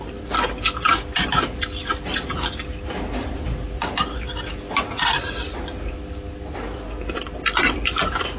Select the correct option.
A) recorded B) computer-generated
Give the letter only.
A